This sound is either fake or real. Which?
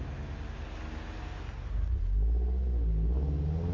real